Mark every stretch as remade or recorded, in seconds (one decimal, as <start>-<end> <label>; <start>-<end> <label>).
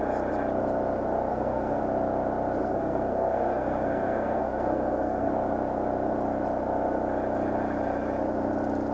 0.0-1.3 recorded; 1.3-1.8 remade; 1.8-2.6 recorded; 2.6-5.3 remade; 5.3-8.9 recorded